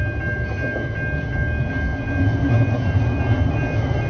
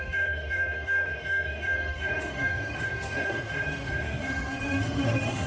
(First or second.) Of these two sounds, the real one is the first